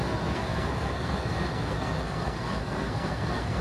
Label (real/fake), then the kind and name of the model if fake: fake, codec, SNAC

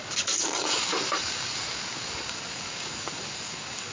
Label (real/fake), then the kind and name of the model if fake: fake, codec, DAC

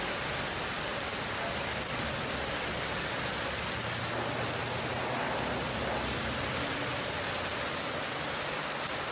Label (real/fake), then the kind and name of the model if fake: real